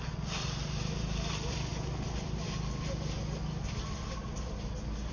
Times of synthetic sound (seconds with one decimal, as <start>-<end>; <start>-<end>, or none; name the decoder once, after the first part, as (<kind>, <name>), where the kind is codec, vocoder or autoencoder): none